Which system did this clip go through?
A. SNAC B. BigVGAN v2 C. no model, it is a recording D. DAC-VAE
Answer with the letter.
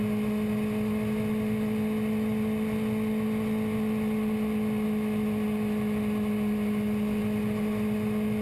C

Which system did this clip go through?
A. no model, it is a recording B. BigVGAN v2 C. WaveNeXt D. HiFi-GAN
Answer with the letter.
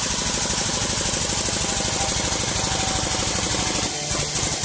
A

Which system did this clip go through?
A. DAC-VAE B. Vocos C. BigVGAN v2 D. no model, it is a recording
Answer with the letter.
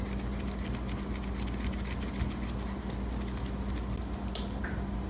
D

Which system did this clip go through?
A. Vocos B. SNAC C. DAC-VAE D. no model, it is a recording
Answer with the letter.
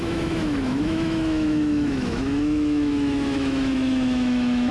C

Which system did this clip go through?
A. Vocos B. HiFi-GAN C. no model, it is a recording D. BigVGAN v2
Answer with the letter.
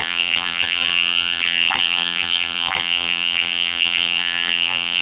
D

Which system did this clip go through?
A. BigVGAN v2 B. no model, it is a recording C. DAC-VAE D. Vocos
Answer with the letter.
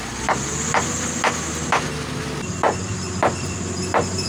B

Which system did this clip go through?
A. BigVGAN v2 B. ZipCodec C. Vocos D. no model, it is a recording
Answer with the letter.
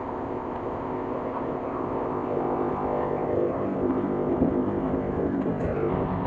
B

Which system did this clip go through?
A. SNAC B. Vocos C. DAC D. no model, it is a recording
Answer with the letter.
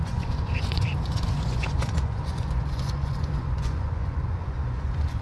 B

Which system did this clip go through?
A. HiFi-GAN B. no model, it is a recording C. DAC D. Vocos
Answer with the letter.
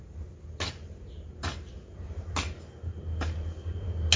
B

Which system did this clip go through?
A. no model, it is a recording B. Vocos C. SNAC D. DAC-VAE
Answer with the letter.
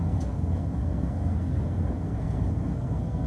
C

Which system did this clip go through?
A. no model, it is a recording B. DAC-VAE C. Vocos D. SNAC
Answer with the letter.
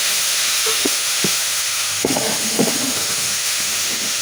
B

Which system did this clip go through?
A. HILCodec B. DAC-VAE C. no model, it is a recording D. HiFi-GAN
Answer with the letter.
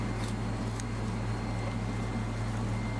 C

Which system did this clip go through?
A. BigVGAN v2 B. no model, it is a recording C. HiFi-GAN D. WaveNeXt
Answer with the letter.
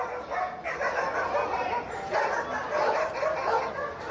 B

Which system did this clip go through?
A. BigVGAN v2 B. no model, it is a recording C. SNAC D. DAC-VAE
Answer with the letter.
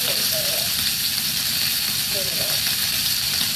A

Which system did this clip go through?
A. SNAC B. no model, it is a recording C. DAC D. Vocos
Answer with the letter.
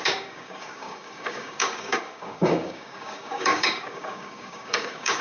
C